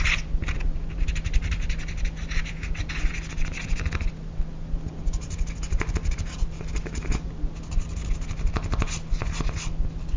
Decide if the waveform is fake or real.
real